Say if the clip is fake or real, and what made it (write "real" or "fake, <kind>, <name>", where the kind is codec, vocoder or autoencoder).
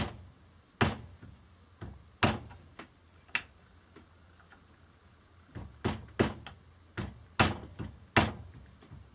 real